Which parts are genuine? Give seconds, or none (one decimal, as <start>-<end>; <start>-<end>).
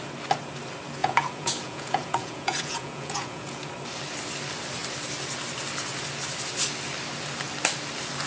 0.0-1.0; 3.7-8.3